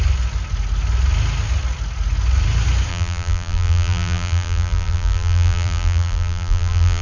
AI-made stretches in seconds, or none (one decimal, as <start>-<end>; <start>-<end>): 2.9-7.0